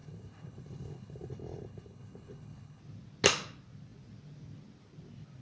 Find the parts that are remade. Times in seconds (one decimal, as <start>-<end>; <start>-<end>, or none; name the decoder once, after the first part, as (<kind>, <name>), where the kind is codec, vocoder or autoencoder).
0.0-2.8 (codec, HILCodec)